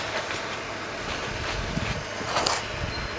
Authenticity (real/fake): real